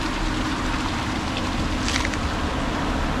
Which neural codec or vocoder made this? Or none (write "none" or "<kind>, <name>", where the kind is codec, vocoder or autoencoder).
none